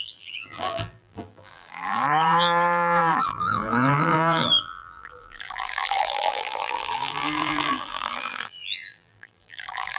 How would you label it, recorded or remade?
remade